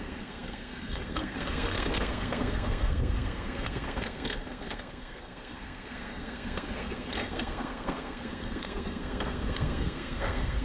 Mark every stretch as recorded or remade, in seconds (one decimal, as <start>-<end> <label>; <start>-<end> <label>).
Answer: 0.0-10.6 remade